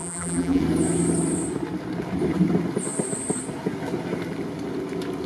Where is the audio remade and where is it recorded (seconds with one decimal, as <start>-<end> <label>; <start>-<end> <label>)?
0.0-0.6 remade; 0.6-5.3 recorded